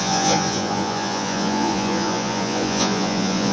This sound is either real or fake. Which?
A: fake